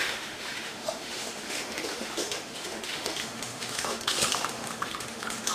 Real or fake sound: fake